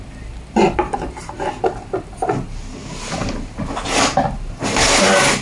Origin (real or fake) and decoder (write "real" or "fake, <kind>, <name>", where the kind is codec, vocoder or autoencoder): real